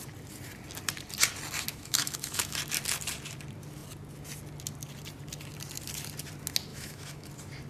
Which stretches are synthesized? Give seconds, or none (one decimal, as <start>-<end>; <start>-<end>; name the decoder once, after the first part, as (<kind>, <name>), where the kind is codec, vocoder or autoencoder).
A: 1.7-2.6 (autoencoder, DAC-VAE); 6.7-7.3